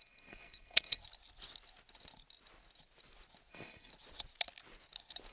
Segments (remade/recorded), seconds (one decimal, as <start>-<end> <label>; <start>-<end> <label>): 0.0-1.0 remade; 1.0-3.5 recorded; 3.5-3.9 remade; 3.9-5.3 recorded